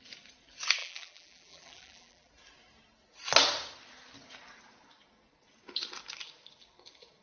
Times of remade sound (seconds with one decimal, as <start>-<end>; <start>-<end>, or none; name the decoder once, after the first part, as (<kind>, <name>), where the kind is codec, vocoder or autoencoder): 0.8-2.3 (vocoder, BigVGAN v2)